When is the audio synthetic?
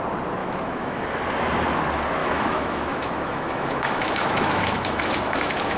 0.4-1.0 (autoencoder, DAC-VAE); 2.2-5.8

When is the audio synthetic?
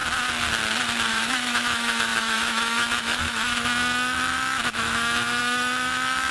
1.1-6.3 (autoencoder, DAC-VAE)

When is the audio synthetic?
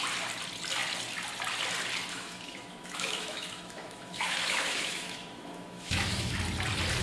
2.1-6.3 (autoencoder, DAC-VAE)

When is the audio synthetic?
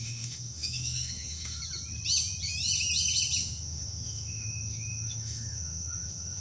0.0-1.6 (autoencoder, DAC-VAE); 3.4-6.4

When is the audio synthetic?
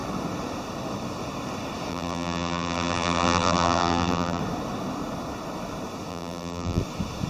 1.9-4.4 (vocoder, BigVGAN v2); 6.1-6.8